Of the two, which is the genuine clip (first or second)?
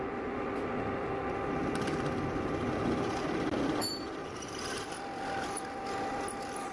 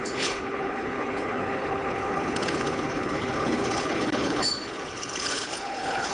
first